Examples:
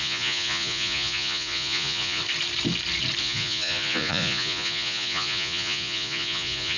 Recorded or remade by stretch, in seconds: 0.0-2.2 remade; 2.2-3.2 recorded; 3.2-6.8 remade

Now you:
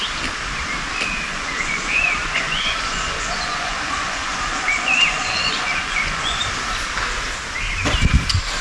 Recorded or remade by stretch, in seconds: 0.0-1.3 recorded; 1.3-6.4 remade; 6.4-8.6 recorded

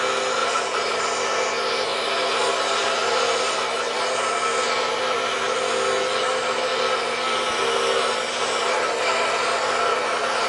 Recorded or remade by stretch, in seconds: 0.0-0.4 recorded; 0.4-1.0 remade; 1.0-10.5 recorded

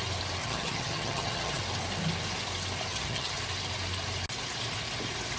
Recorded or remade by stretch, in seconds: 0.0-0.4 recorded; 0.4-1.6 remade; 1.6-2.9 recorded; 2.9-3.4 remade; 3.4-5.4 recorded

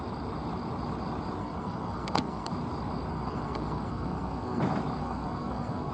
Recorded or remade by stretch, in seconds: 0.0-1.4 recorded; 1.4-2.5 remade; 2.5-3.1 recorded; 3.1-4.6 remade; 4.6-5.0 recorded; 5.0-5.9 remade